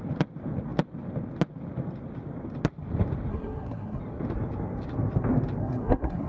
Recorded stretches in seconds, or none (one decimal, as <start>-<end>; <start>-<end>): 0.0-3.3; 4.0-5.6